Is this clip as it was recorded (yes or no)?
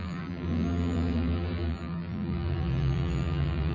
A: no